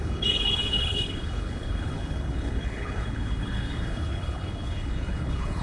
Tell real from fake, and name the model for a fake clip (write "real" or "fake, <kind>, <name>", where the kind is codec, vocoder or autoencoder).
fake, codec, HILCodec